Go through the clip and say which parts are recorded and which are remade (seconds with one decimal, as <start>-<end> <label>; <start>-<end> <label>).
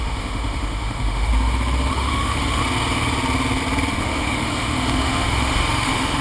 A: 0.0-1.3 remade; 1.3-1.9 recorded; 1.9-2.6 remade; 2.6-4.0 recorded; 4.0-6.2 remade